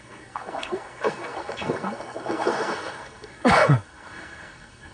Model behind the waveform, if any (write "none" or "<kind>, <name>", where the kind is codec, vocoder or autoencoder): codec, SNAC